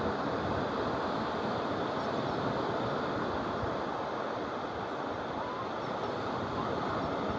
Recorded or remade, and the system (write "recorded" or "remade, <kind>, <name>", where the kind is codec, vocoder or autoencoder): recorded